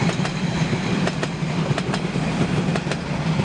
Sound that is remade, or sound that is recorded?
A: recorded